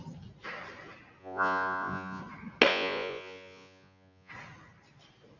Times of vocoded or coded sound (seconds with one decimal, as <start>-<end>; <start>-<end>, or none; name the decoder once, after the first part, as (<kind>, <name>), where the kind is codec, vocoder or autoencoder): 1.2-2.2 (vocoder, Vocos); 2.7-4.3